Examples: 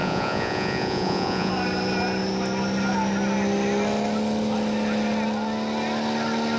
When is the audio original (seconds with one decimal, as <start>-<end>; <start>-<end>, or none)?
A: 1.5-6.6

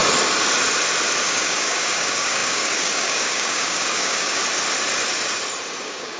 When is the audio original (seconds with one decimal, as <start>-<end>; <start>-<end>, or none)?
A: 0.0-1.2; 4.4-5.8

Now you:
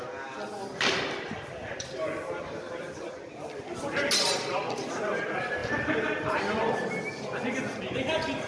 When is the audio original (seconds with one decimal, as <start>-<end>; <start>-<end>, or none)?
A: 0.0-5.6; 6.4-8.5

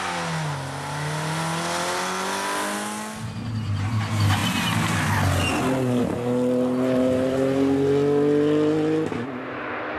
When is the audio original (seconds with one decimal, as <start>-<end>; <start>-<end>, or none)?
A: 0.0-10.0